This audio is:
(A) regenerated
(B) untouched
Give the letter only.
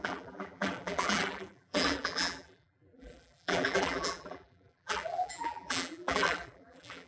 A